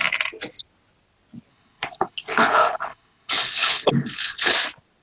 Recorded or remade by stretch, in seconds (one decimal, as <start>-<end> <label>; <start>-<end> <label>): 0.0-1.5 recorded; 1.5-4.5 remade; 4.5-5.0 recorded